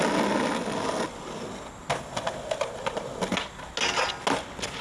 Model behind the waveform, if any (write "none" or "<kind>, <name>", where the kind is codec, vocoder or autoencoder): none